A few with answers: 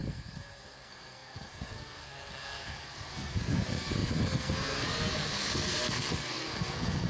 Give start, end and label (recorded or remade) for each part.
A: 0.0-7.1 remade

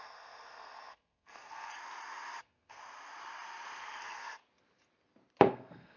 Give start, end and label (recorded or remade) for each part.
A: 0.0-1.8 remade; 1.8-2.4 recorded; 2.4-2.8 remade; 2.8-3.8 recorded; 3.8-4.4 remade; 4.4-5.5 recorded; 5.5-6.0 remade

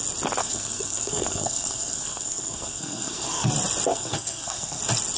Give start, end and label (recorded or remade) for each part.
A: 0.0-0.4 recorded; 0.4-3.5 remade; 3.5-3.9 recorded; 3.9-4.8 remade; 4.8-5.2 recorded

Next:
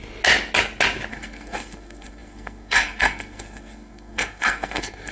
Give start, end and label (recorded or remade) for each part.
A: 0.0-1.1 recorded; 1.1-5.1 remade